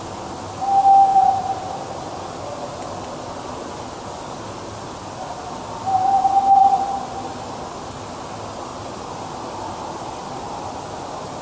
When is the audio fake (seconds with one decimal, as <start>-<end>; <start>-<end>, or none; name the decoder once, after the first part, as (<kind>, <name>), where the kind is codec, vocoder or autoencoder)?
none